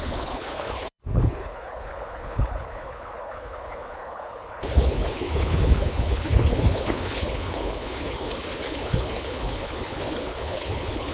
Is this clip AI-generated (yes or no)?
yes